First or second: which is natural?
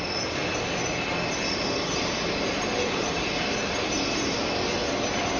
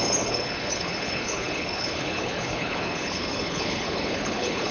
first